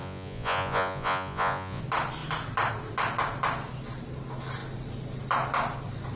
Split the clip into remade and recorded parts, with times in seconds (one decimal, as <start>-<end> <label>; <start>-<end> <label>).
0.0-1.8 remade; 1.8-6.2 recorded